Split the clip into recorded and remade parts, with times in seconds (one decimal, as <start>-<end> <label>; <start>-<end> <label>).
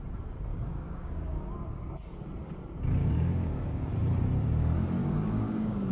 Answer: 0.0-0.5 recorded; 0.5-1.4 remade; 1.4-3.0 recorded; 3.0-3.9 remade; 3.9-5.0 recorded; 5.0-5.9 remade